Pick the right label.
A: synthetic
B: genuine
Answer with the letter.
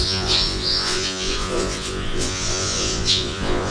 A